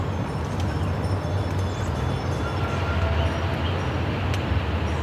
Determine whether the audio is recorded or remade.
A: recorded